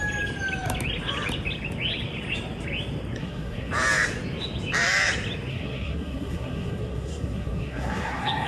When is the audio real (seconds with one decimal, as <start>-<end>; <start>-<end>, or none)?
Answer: 0.0-3.2; 3.7-5.5